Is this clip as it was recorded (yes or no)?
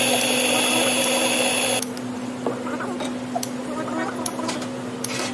yes